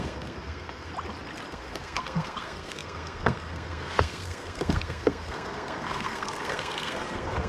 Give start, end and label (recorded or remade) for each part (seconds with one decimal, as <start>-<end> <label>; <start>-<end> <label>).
0.0-0.9 remade; 0.9-1.5 recorded; 1.5-7.5 remade